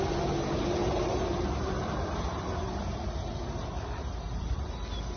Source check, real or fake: real